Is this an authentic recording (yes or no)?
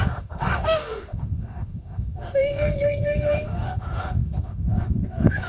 no